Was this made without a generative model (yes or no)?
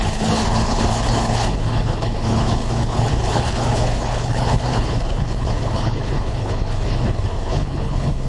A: no